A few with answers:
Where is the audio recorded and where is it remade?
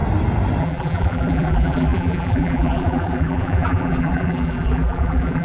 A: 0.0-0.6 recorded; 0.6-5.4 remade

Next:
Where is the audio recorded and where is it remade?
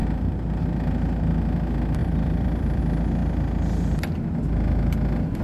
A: 0.0-2.0 recorded; 2.0-2.8 remade; 2.8-5.4 recorded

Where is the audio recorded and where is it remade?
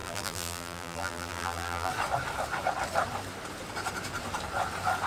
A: 0.0-1.9 remade; 1.9-5.1 recorded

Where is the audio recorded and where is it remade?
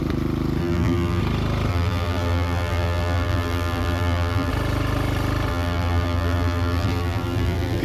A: 0.0-0.6 recorded; 0.6-1.2 remade; 1.2-1.7 recorded; 1.7-4.5 remade; 4.5-5.5 recorded; 5.5-7.8 remade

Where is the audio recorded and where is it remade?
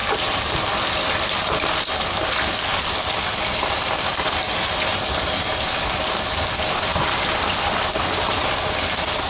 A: 0.0-6.9 recorded; 6.9-7.4 remade; 7.4-9.3 recorded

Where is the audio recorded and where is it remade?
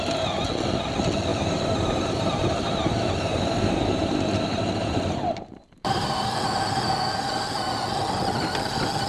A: 0.0-1.3 recorded; 1.3-6.3 remade; 6.3-9.1 recorded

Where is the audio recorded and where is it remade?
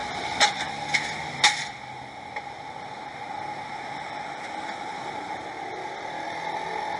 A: 0.0-7.0 recorded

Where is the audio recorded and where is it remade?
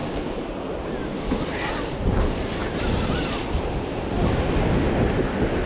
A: 0.0-0.5 remade; 0.5-1.0 recorded; 1.0-2.2 remade; 2.2-5.7 recorded